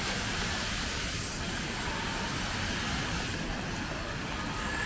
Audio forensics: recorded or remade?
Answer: recorded